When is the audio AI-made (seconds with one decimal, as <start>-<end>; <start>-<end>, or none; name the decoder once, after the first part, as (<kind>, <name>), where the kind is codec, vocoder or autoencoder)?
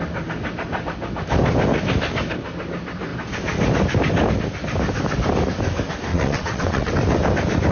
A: 6.1-6.9 (vocoder, WaveNeXt)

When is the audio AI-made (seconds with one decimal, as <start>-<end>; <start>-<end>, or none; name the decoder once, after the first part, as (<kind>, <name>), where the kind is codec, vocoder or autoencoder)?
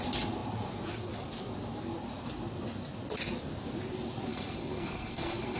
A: 4.3-5.6 (codec, SNAC)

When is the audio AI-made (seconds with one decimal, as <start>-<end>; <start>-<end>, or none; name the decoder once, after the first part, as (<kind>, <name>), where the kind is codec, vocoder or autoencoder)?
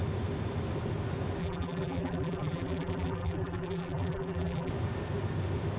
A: 1.4-4.7 (vocoder, BigVGAN v2)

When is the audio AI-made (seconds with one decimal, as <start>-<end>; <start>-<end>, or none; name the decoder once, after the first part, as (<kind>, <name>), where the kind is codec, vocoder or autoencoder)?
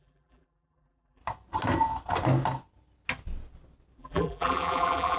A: 0.0-1.2 (vocoder, BigVGAN v2); 4.0-5.2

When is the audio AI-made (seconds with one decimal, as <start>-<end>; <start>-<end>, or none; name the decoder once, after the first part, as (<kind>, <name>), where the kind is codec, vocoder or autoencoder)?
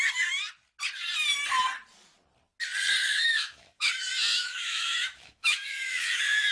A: 3.0-3.9 (autoencoder, DAC-VAE); 4.3-6.5